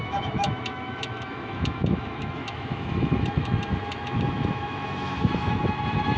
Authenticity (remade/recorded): remade